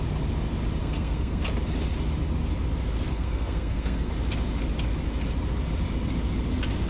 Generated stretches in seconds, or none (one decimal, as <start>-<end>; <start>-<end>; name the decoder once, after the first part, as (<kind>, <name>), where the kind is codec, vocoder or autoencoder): 0.8-1.4 (codec, SNAC); 3.1-4.1